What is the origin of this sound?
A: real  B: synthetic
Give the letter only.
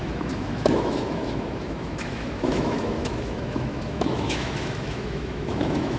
B